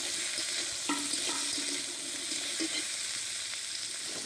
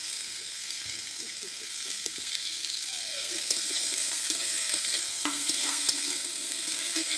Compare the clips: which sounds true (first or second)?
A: first